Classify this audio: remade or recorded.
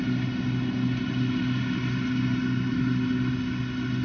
recorded